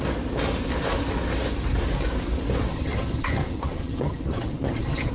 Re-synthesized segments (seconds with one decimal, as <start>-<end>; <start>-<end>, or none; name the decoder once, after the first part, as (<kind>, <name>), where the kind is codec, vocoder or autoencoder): 2.7-5.1 (vocoder, HiFi-GAN)